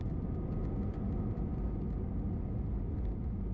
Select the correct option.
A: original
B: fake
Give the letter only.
A